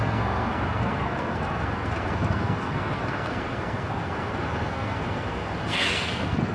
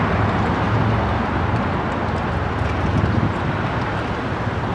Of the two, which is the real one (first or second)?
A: second